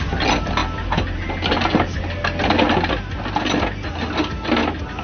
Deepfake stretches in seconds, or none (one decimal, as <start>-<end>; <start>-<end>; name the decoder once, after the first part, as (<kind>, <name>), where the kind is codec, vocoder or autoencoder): none